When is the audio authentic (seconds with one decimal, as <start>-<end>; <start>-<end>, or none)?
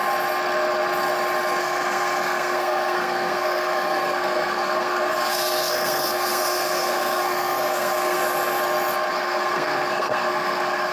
0.0-1.6; 8.2-9.1